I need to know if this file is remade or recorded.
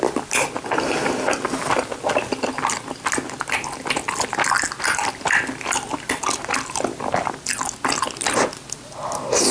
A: recorded